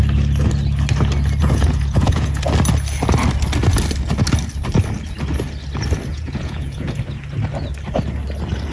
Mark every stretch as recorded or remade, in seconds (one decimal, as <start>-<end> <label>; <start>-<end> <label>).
0.0-1.4 recorded; 1.4-2.4 remade; 2.4-6.1 recorded; 6.1-7.0 remade; 7.0-8.7 recorded